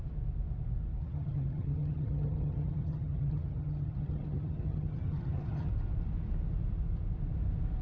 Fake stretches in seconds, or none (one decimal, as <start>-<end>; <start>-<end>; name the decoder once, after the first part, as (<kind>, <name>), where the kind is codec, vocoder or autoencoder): 1.0-5.7 (vocoder, HiFi-GAN)